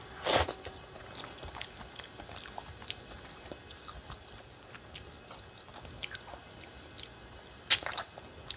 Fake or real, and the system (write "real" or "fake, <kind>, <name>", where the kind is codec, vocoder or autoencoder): real